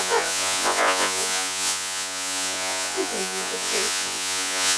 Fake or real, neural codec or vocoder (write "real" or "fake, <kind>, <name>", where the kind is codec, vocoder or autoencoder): fake, vocoder, Vocos